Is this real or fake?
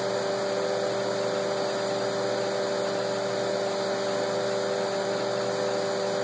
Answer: real